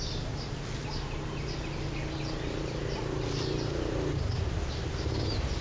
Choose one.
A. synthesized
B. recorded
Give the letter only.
B